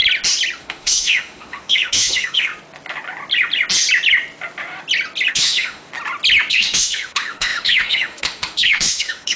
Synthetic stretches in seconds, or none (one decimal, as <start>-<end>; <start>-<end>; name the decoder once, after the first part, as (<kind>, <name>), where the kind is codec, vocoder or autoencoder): 0.6-2.5 (autoencoder, DAC-VAE); 5.3-5.9; 6.5-9.4